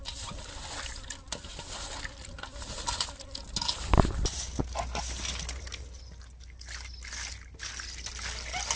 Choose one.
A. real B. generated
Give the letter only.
A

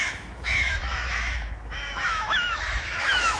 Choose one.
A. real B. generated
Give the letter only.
B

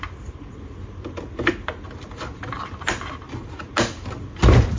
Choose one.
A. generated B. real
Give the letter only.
B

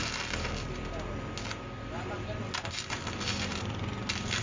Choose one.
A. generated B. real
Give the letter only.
B